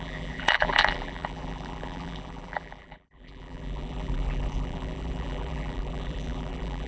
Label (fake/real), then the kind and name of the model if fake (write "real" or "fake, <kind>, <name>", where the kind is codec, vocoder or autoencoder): fake, vocoder, BigVGAN v2